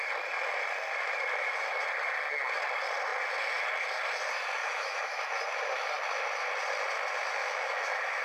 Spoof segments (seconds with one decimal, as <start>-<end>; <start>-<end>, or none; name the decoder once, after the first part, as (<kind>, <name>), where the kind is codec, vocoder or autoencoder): 4.6-5.2 (autoencoder, DAC-VAE); 7.4-8.2

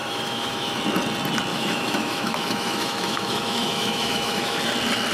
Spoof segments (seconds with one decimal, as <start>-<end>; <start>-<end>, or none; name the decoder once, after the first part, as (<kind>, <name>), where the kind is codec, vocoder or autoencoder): 0.0-0.8 (autoencoder, DAC-VAE); 1.5-4.6

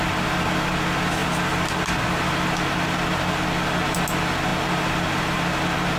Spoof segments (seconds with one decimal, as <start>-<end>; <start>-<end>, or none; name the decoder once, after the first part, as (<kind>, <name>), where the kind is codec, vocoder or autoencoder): none

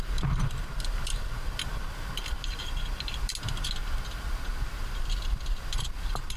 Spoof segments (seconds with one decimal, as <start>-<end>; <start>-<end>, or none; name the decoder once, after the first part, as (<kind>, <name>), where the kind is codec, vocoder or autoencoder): none

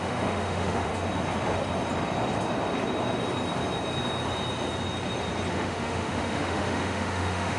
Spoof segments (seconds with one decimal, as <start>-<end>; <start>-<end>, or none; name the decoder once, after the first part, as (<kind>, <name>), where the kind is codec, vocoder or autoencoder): 0.0-0.9 (autoencoder, DAC-VAE); 5.5-7.6

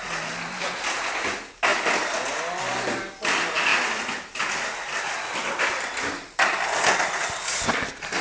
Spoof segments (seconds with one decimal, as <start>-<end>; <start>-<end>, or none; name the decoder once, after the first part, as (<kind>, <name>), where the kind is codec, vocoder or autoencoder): none

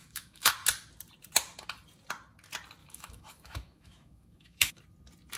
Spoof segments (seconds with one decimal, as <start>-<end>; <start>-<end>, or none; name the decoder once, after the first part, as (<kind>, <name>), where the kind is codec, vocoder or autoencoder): 0.0-0.5 (autoencoder, DAC-VAE); 2.8-4.8